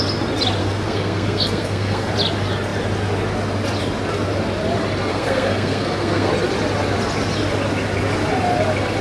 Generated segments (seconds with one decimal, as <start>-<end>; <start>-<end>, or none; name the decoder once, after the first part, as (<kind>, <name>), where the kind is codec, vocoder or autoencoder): 0.6-2.1 (codec, SNAC); 5.1-6.3